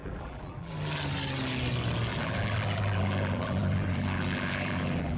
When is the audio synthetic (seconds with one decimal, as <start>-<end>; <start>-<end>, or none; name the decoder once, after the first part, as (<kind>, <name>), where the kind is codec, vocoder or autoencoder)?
0.0-0.7 (vocoder, BigVGAN v2); 2.1-5.2